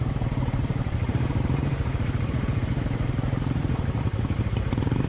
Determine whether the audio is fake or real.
fake